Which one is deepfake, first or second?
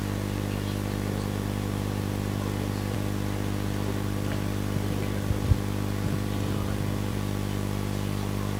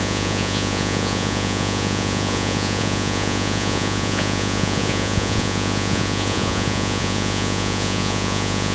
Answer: second